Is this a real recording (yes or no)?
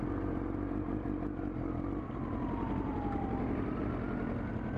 yes